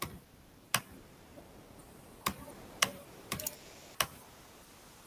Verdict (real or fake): real